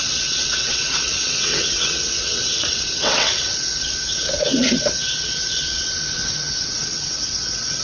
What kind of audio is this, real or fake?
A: fake